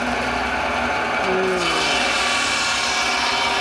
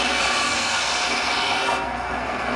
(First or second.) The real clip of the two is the first